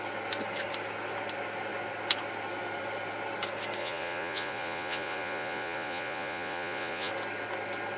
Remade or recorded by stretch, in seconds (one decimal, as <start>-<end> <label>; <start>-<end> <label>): 0.0-3.8 recorded; 3.8-7.1 remade; 7.1-8.0 recorded